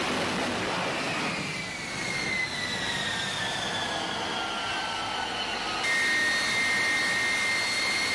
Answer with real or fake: real